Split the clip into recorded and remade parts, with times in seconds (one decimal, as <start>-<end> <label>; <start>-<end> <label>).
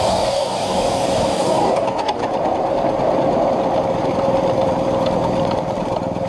0.0-2.2 remade; 2.2-6.3 recorded